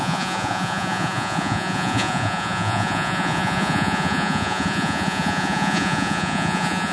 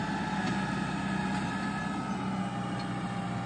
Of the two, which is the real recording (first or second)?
second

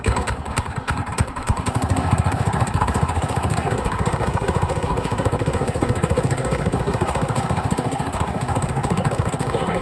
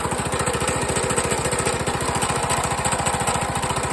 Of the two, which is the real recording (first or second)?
second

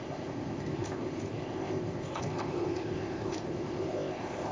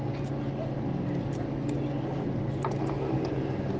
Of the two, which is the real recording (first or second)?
second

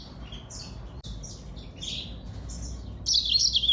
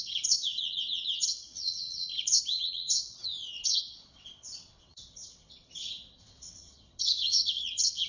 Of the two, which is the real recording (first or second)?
first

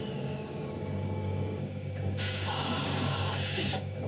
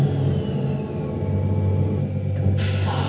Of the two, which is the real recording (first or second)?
second